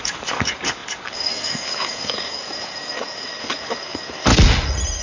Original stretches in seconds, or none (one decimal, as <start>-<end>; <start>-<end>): 4.3-5.0